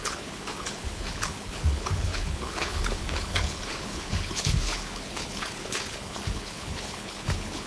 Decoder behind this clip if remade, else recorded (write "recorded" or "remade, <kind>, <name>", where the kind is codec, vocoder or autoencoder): remade, codec, HILCodec